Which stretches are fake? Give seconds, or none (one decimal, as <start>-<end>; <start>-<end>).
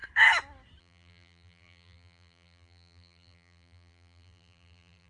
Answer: 0.8-5.1